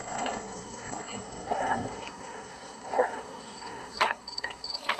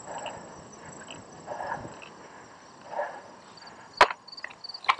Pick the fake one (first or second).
first